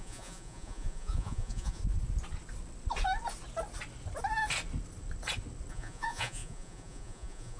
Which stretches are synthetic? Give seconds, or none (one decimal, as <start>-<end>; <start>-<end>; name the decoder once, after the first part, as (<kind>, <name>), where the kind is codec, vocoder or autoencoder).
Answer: 0.0-1.8 (vocoder, Vocos); 5.7-7.6